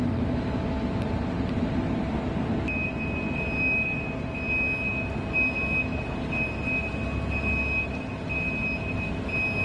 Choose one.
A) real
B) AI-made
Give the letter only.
A